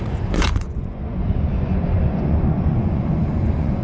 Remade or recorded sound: remade